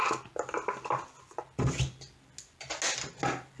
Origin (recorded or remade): recorded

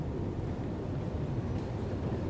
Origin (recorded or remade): recorded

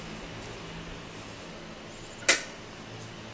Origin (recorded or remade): recorded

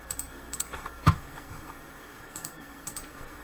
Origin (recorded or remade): remade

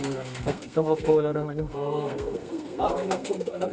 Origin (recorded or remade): remade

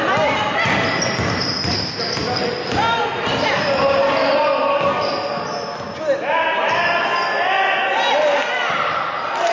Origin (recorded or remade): recorded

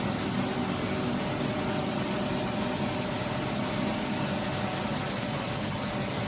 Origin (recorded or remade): recorded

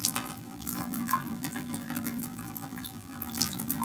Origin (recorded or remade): remade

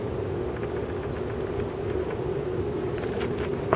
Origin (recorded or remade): recorded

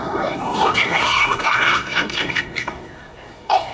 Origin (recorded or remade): remade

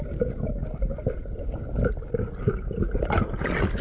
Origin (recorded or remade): recorded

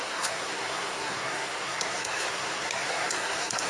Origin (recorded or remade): remade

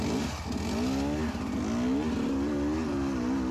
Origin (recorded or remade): recorded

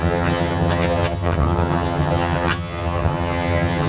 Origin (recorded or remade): remade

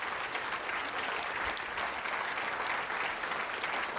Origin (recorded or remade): recorded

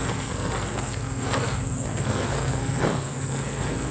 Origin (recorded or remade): remade